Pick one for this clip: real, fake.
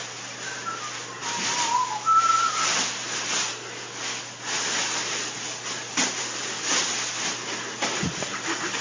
real